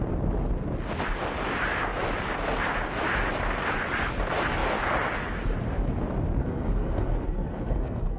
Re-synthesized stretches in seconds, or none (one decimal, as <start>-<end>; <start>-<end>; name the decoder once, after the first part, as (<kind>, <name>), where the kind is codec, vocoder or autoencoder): 6.4-8.2 (codec, SNAC)